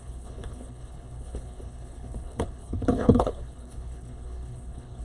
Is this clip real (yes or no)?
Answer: no